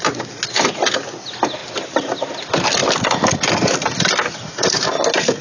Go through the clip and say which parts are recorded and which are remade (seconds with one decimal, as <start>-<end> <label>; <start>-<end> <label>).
0.0-5.4 recorded